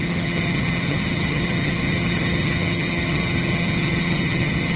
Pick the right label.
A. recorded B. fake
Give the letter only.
B